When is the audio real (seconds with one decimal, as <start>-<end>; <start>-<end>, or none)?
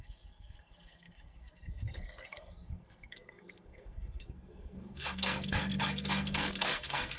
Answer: none